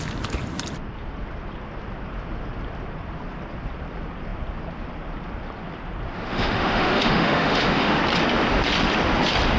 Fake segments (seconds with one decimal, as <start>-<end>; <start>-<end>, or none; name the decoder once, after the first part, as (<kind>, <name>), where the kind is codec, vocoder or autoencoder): 6.3-8.0 (autoencoder, DAC-VAE)